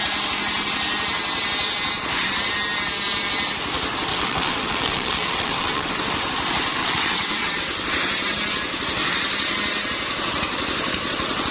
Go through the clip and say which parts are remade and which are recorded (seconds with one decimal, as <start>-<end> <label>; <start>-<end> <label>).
0.0-4.1 recorded; 4.1-5.9 remade; 5.9-6.8 recorded; 6.8-7.6 remade; 7.6-11.5 recorded